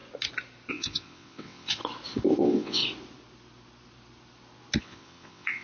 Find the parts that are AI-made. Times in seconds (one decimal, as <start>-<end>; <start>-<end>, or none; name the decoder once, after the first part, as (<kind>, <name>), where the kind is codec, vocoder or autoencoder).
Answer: 0.7-1.8 (vocoder, WaveNeXt); 2.4-2.8; 4.8-5.6